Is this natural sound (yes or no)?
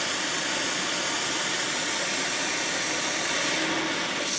yes